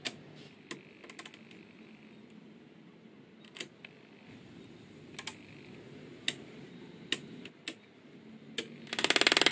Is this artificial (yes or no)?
no